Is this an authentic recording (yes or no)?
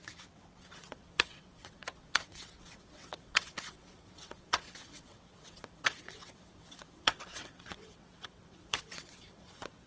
no